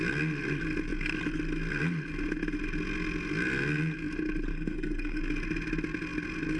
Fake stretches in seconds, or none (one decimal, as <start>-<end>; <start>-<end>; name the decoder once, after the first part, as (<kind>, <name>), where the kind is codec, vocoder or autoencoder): 4.5-5.2 (codec, SNAC)